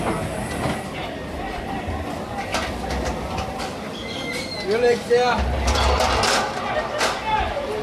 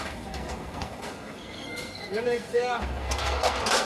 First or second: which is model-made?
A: second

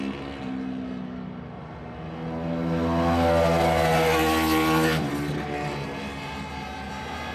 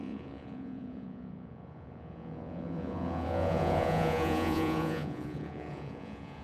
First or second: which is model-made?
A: second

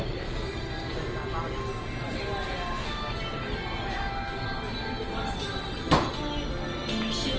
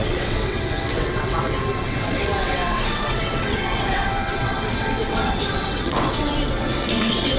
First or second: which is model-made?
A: second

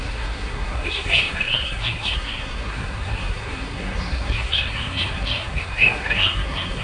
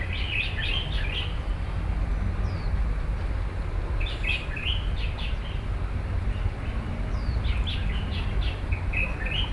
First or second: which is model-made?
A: first